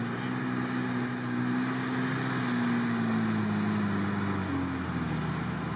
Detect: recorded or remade recorded